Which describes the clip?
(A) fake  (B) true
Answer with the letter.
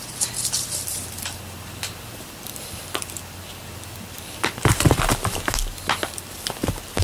A